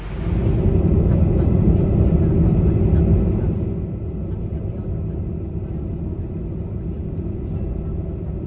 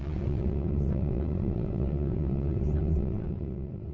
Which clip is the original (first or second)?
first